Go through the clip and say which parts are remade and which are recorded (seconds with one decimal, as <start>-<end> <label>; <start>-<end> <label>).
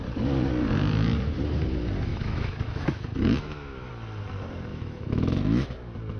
0.0-2.1 recorded; 2.1-3.9 remade; 3.9-4.7 recorded; 4.7-5.7 remade; 5.7-6.2 recorded